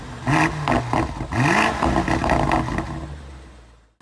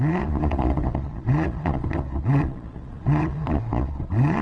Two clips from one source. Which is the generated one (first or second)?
second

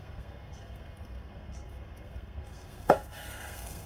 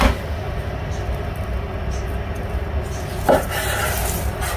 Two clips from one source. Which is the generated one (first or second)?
first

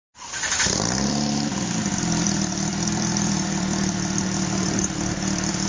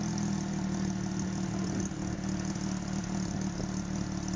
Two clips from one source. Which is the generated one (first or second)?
first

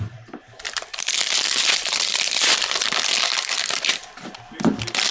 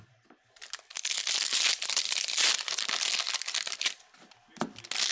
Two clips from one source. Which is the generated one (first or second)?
first